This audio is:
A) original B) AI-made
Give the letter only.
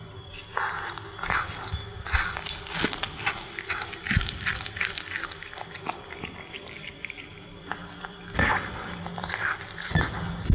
B